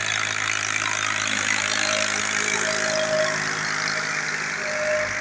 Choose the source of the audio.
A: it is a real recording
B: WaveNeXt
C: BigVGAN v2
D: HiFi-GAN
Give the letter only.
A